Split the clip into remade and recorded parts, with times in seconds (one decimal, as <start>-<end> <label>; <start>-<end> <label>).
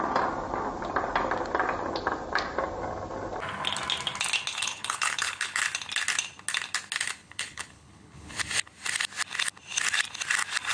0.0-4.5 recorded; 4.5-5.6 remade; 5.6-7.2 recorded; 7.2-8.4 remade; 8.4-10.7 recorded